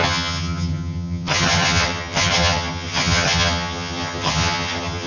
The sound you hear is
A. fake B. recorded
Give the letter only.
A